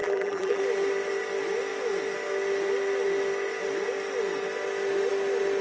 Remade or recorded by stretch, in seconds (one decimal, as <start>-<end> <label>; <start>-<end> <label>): 0.0-0.6 remade; 0.6-5.6 recorded